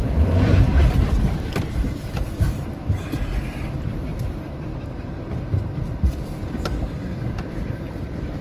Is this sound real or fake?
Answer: fake